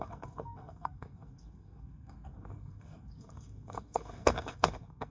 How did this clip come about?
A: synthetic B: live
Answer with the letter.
A